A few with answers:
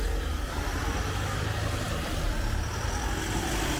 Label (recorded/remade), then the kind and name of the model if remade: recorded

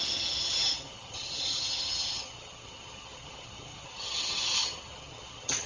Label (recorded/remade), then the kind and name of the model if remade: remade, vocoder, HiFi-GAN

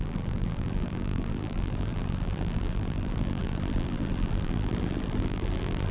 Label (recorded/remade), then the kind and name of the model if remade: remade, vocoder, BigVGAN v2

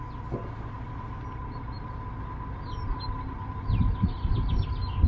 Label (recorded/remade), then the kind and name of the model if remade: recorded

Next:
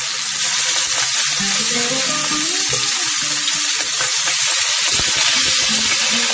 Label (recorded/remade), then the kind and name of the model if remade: recorded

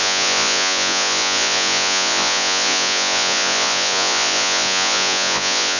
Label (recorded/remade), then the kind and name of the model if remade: remade, vocoder, Vocos